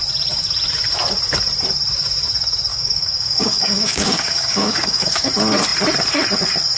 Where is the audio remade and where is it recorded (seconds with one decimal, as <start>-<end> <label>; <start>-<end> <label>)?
0.0-2.7 recorded; 2.7-5.3 remade; 5.3-6.8 recorded